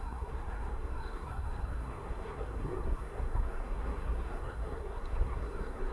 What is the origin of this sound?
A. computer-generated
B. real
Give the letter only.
A